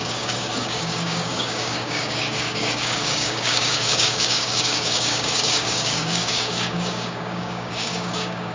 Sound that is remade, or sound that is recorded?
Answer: remade